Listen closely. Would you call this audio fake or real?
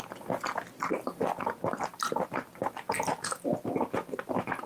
real